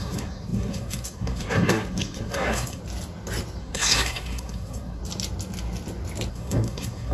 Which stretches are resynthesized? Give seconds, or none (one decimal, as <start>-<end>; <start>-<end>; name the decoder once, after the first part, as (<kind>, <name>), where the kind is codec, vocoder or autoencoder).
0.0-2.8 (codec, SNAC); 3.6-5.0; 6.3-7.1